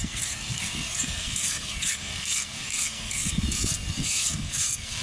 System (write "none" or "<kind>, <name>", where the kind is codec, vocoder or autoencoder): codec, SNAC